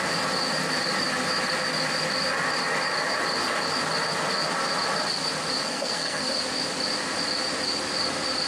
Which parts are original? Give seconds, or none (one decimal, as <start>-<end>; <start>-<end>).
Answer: 0.0-5.6; 6.3-8.5